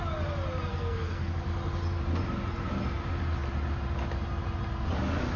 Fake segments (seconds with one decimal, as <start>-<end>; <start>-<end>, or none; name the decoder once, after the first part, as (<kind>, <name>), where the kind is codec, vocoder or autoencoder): 0.7-1.3 (codec, SNAC)